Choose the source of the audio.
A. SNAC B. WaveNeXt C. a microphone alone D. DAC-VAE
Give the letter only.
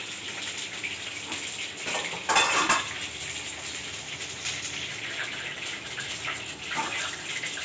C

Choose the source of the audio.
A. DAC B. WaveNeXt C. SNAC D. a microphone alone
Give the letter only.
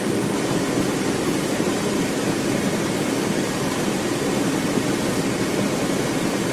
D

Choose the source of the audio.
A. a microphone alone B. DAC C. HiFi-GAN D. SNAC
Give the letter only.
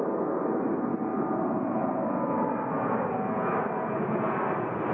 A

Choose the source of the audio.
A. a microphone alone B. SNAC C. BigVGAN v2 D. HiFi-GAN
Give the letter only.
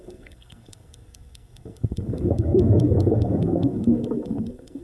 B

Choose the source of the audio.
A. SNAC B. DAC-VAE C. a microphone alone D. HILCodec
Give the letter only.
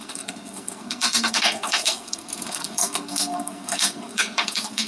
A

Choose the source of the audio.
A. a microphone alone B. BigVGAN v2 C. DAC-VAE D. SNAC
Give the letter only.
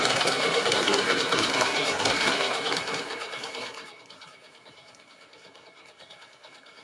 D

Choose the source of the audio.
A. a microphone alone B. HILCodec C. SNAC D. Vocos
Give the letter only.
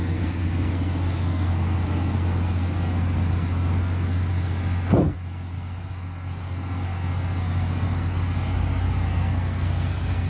C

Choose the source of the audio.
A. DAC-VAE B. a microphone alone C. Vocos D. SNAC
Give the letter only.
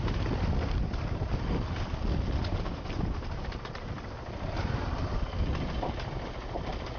B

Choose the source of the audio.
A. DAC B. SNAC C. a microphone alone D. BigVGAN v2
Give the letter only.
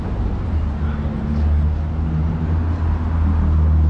C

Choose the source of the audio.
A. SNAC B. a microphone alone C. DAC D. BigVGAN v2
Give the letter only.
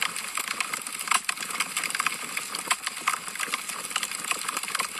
B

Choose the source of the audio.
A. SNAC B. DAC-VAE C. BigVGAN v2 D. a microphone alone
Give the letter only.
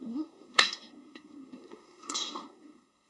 A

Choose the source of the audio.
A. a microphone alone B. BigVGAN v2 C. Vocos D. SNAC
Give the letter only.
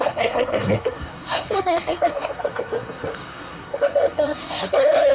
D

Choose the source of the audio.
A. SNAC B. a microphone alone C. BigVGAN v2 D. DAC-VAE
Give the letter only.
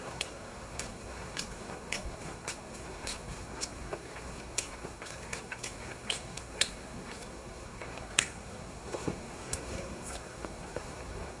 A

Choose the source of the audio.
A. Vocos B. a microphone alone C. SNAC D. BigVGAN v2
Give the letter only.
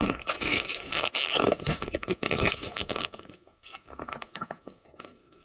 C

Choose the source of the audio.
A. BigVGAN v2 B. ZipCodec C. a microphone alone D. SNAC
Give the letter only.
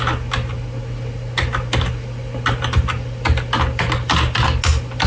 C